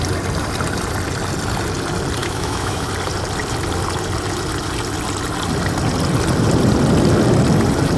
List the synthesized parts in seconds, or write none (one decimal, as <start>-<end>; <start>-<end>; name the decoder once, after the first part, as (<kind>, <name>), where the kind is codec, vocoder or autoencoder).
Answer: 2.2-2.9 (autoencoder, DAC-VAE)